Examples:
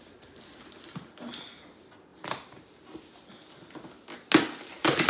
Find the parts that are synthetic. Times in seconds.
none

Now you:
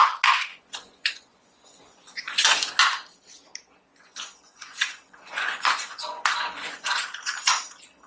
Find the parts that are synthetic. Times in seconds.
0.5-2.8; 3.9-7.0

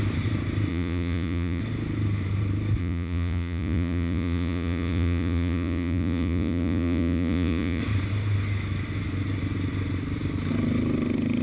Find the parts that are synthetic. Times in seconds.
0.7-1.6; 2.8-7.8

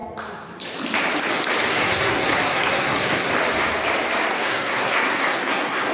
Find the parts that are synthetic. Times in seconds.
1.7-3.3; 4.3-5.9

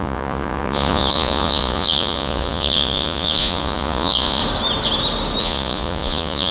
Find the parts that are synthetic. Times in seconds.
0.0-4.4; 5.4-6.5

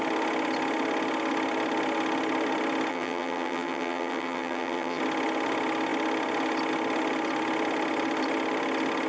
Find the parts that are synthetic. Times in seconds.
2.9-5.0